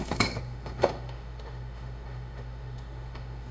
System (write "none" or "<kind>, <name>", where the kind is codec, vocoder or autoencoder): autoencoder, DAC-VAE